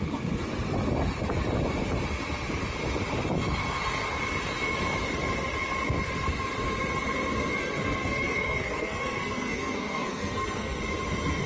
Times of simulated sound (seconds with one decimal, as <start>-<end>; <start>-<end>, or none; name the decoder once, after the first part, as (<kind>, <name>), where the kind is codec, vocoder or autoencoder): 7.5-10.8 (codec, SNAC)